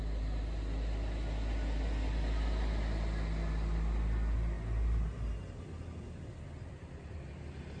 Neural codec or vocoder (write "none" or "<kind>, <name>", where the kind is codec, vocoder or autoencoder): none